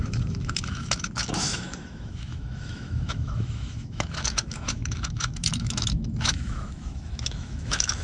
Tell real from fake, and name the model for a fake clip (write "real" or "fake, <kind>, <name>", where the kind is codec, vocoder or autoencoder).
fake, autoencoder, DAC-VAE